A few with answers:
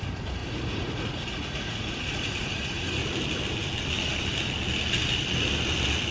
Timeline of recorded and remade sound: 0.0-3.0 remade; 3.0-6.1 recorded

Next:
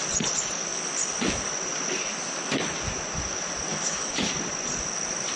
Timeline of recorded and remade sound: 0.0-3.7 recorded; 3.7-4.3 remade; 4.3-5.4 recorded

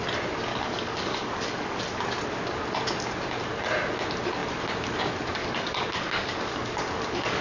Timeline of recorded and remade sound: 0.0-0.5 recorded; 0.5-2.0 remade; 2.0-5.4 recorded; 5.4-7.4 remade

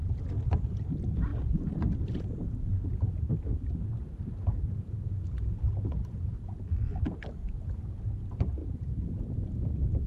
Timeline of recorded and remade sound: 0.0-8.6 recorded; 8.6-9.2 remade; 9.2-10.1 recorded

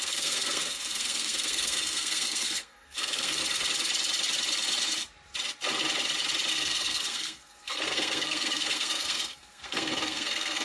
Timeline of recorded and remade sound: 0.0-3.4 remade; 3.4-6.5 recorded; 6.5-10.6 remade

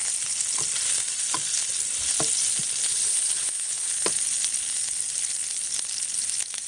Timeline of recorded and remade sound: 0.0-2.9 recorded; 2.9-3.9 remade; 3.9-6.7 recorded

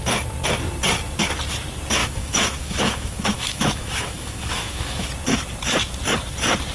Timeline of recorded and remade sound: 0.0-2.0 recorded; 2.0-5.1 remade; 5.1-6.7 recorded